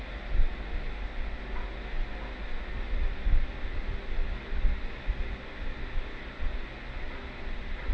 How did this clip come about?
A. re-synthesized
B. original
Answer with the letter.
B